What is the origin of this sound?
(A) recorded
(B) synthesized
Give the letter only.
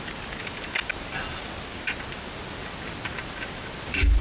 A